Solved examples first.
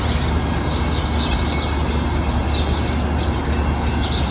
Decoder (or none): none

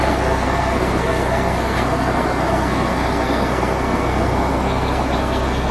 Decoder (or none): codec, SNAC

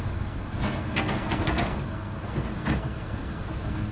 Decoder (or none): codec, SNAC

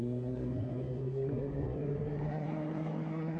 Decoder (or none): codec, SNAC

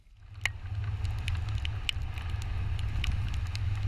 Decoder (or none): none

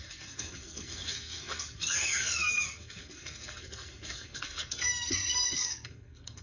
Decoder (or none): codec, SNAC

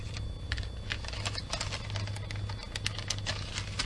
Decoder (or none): none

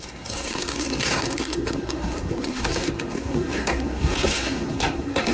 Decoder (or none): codec, SNAC